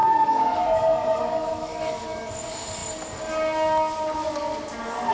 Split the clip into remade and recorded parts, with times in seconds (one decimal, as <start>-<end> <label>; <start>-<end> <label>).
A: 0.0-2.3 remade; 2.3-5.1 recorded